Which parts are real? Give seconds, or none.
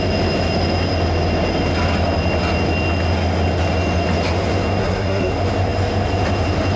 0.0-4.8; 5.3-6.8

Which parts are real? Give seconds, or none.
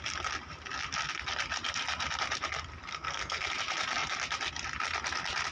0.0-2.9; 3.5-5.5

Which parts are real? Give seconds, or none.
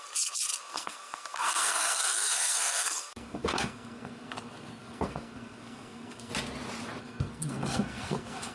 6.3-7.0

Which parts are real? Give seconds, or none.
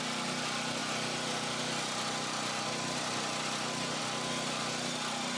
0.0-5.4